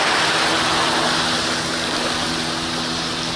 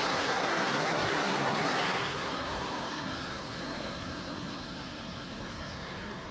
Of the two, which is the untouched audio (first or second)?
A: first